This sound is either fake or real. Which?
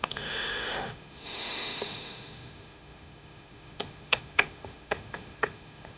fake